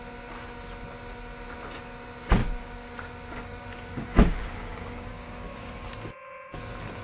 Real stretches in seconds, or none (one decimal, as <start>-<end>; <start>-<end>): 0.0-2.4; 5.9-7.0